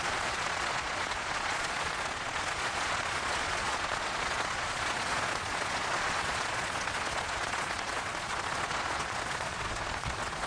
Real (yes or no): no